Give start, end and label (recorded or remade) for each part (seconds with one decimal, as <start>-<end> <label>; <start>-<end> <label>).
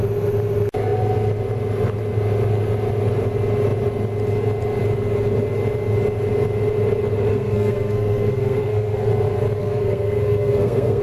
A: 0.0-7.3 recorded; 7.3-9.1 remade; 9.1-9.6 recorded; 9.6-11.0 remade